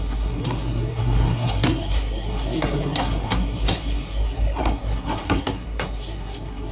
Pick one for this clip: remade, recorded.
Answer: remade